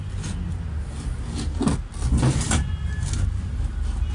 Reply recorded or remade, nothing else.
recorded